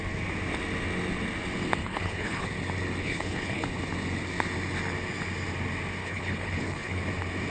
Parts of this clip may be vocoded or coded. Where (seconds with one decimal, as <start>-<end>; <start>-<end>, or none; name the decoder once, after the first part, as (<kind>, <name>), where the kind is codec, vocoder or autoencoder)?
1.8-2.5 (codec, HILCodec); 3.0-3.8; 6.0-7.0